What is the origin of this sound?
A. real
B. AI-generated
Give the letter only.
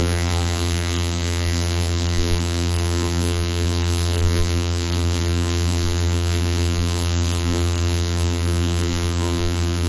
B